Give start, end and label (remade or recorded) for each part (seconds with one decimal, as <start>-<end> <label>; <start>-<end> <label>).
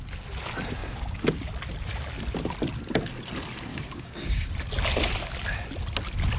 0.0-0.8 recorded; 0.8-1.5 remade; 1.5-3.7 recorded; 3.7-4.5 remade; 4.5-6.4 recorded